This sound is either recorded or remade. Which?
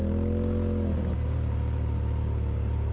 recorded